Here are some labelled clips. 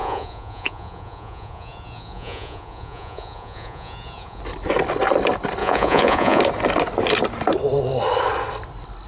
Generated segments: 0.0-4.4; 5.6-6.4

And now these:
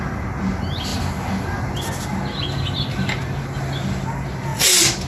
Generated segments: none